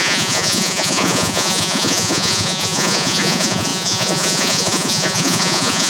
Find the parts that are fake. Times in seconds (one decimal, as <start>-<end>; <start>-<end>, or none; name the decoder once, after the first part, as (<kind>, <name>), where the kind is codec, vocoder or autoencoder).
0.0-5.9 (vocoder, Vocos)

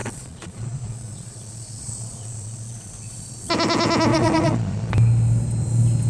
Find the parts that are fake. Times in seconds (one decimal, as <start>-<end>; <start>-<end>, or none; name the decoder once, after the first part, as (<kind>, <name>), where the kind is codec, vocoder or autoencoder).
0.0-3.5 (vocoder, Vocos); 4.1-4.9